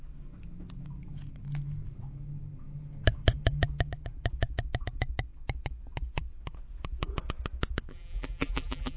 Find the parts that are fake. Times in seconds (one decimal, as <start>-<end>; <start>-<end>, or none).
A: 7.9-9.0